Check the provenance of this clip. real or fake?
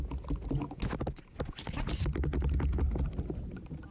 real